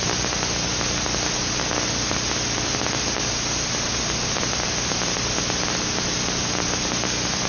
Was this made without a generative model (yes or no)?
yes